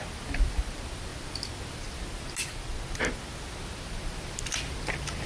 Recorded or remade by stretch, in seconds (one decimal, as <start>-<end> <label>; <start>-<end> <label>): 0.0-5.3 recorded